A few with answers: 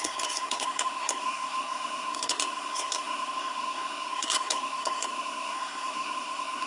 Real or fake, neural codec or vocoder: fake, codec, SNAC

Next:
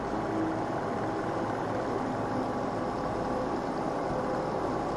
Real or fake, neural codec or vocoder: real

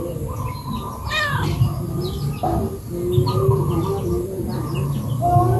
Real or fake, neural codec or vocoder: real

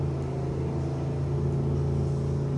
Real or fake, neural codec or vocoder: real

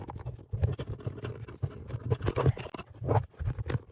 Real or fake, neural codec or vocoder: real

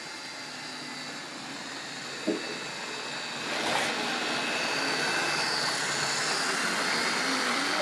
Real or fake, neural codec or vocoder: real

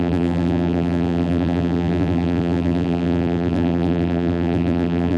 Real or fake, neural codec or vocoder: fake, vocoder, BigVGAN v2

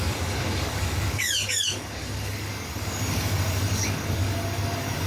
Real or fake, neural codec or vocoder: fake, codec, DAC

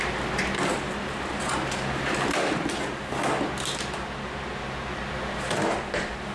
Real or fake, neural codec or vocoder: real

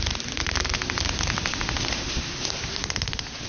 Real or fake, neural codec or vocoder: real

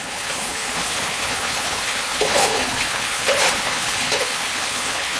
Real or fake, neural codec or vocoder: fake, codec, HILCodec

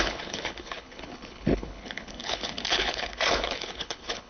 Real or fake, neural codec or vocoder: fake, codec, HILCodec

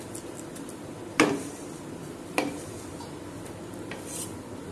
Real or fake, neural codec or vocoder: fake, vocoder, BigVGAN v2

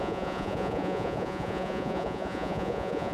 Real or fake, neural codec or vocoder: fake, vocoder, Vocos